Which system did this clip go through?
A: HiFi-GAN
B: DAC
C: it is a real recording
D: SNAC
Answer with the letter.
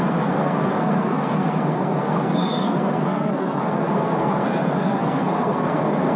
D